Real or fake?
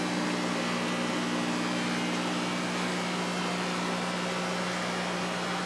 real